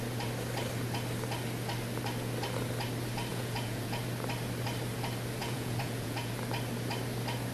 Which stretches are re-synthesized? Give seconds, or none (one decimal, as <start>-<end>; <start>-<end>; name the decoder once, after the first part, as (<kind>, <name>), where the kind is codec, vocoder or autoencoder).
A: 3.3-4.0 (vocoder, Vocos); 5.4-6.3